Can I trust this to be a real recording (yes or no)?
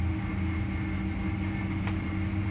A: yes